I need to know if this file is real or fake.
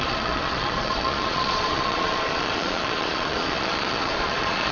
fake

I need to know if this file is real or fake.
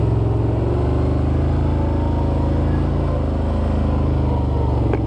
real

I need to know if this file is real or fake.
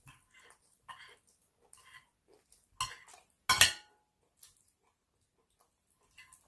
real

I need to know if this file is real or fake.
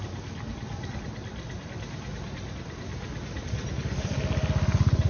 real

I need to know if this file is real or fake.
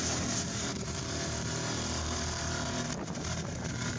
fake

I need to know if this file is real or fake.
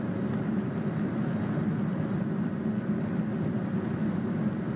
real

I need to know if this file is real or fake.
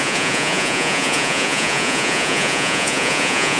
fake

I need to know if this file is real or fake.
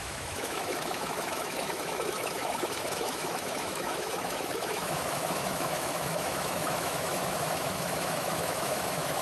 fake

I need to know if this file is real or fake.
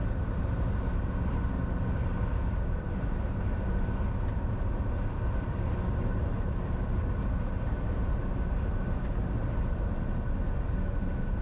real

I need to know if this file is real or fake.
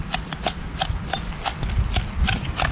real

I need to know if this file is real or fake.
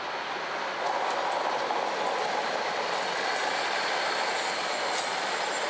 real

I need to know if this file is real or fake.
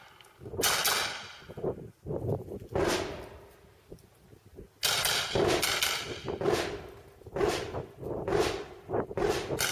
real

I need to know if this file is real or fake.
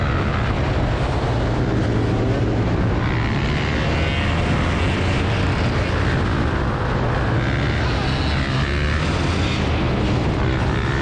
real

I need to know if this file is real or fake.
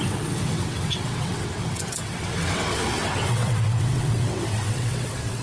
fake